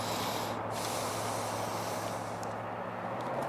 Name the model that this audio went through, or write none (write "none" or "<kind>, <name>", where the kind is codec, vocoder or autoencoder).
none